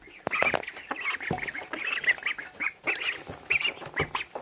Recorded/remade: recorded